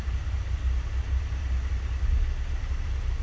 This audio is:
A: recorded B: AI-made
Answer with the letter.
A